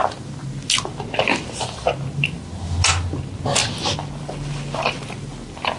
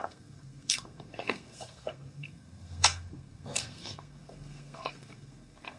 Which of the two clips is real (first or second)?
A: first